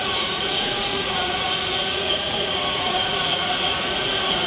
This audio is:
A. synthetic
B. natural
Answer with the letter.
A